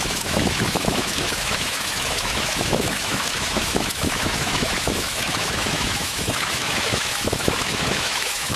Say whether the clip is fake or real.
fake